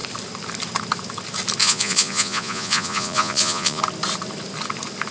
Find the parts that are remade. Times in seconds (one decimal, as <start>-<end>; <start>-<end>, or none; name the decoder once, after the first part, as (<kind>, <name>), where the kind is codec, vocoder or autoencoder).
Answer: 1.6-3.8 (vocoder, Vocos)